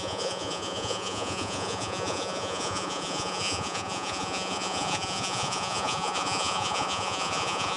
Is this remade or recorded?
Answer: remade